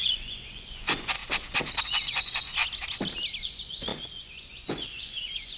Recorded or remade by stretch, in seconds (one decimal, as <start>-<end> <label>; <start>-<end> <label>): 0.0-1.2 remade; 1.2-1.8 recorded; 1.8-2.6 remade; 2.6-3.4 recorded; 3.4-5.6 remade